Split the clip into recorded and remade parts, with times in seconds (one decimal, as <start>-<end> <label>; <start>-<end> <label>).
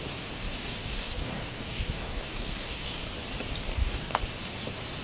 0.0-0.4 recorded; 0.4-3.0 remade; 3.0-3.7 recorded; 3.7-4.2 remade; 4.2-5.0 recorded